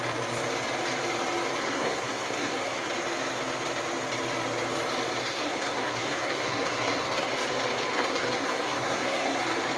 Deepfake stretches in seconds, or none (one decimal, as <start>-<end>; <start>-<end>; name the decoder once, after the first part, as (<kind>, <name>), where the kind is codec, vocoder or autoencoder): 1.6-2.9 (codec, SNAC); 5.2-7.3; 7.9-9.4